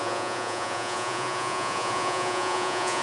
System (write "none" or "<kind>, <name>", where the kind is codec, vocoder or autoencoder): vocoder, Vocos